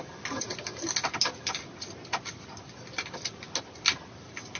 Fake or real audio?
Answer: real